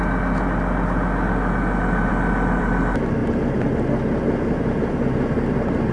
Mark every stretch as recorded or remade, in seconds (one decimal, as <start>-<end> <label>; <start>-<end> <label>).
0.0-3.2 recorded; 3.2-3.7 remade; 3.7-5.9 recorded